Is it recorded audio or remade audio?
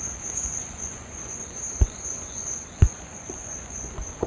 remade